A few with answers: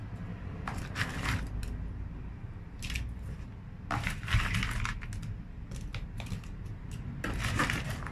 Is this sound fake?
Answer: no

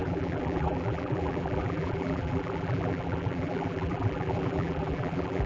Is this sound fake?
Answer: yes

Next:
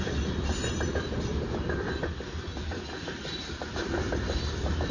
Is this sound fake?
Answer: no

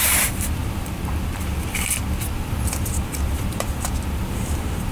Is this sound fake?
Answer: yes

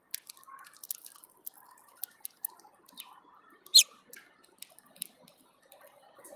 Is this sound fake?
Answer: no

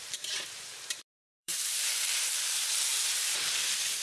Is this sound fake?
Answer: yes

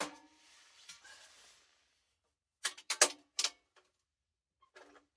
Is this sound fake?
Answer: no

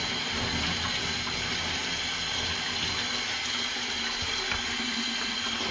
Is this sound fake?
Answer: no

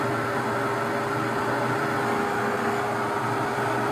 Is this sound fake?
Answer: no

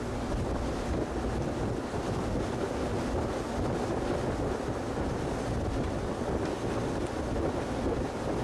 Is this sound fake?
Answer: no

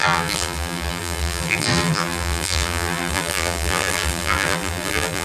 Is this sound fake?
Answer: yes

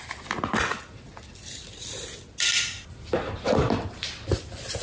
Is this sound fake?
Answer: no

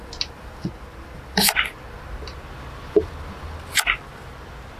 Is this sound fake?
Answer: no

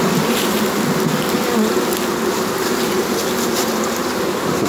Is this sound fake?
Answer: no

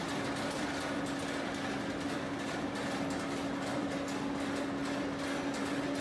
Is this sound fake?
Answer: no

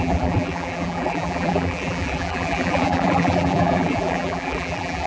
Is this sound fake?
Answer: yes